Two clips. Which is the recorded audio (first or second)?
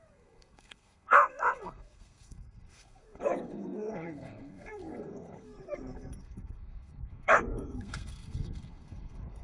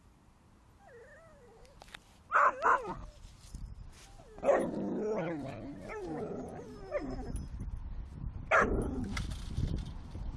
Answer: second